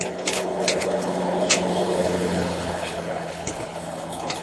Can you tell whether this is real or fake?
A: fake